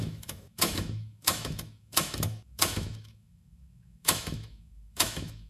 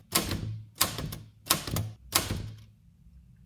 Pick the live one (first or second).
second